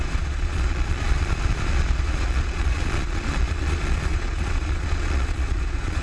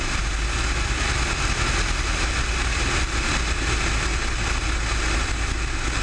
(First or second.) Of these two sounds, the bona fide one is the second